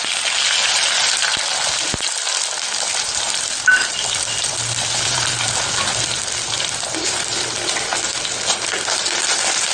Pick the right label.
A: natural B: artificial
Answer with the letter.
A